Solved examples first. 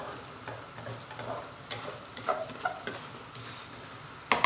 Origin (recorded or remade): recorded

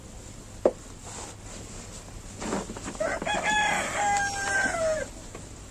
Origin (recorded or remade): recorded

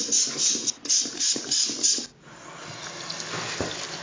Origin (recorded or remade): recorded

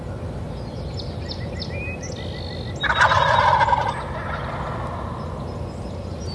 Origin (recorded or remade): recorded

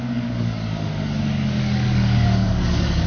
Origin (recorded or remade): remade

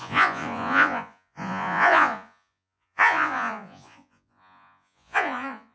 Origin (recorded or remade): remade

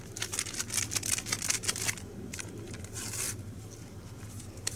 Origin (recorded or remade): recorded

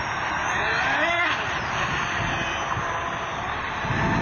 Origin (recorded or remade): recorded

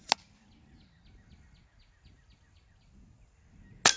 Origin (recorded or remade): recorded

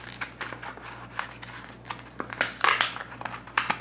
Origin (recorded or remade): recorded